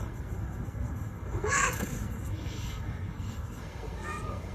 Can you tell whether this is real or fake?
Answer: fake